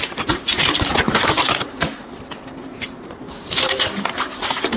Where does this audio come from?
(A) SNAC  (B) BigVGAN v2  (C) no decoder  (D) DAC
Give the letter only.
B